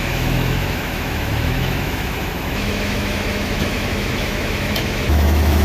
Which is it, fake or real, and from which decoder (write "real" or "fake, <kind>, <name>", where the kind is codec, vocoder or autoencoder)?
fake, autoencoder, DAC-VAE